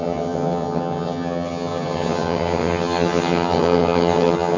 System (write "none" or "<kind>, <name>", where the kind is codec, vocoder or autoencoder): vocoder, HiFi-GAN